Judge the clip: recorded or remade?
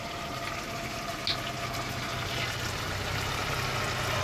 recorded